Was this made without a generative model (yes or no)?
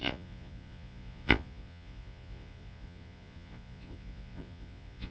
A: no